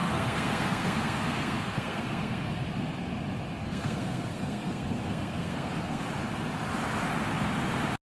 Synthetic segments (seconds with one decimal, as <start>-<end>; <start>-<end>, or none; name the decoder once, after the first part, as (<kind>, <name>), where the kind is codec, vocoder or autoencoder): 0.0-2.5 (codec, SNAC); 3.6-6.0